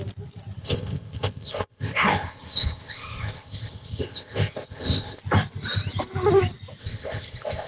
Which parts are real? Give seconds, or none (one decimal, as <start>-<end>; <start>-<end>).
0.0-0.6; 5.2-6.8